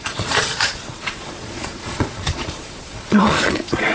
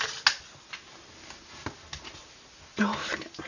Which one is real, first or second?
second